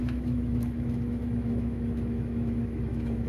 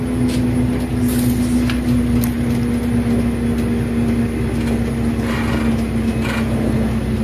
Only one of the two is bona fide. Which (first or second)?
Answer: second